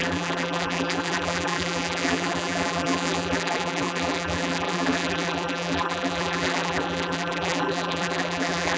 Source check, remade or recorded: remade